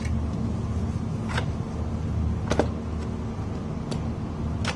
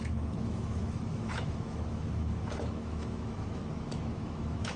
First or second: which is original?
first